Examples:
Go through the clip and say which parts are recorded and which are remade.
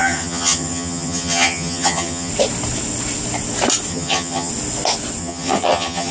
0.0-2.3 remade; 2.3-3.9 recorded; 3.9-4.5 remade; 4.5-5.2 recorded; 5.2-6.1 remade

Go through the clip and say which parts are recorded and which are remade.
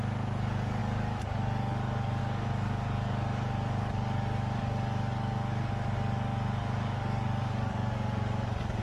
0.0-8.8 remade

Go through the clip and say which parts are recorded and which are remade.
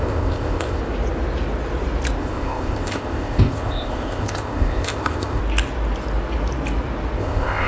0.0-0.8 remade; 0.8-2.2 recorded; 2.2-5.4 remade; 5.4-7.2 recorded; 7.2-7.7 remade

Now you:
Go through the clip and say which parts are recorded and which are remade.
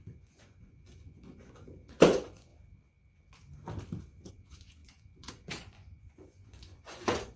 0.0-2.5 remade; 2.5-4.3 recorded; 4.3-7.4 remade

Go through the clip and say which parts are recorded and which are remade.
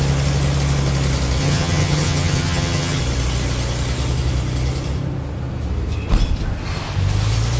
0.0-1.4 recorded; 1.4-3.0 remade; 3.0-7.6 recorded